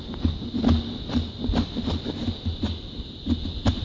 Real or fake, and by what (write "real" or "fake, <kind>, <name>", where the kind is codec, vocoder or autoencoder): real